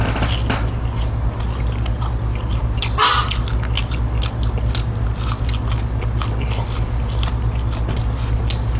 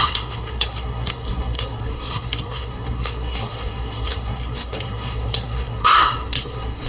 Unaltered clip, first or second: first